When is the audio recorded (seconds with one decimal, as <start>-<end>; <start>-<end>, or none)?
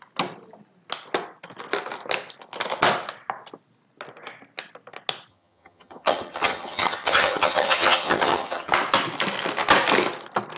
0.0-5.3; 8.7-10.6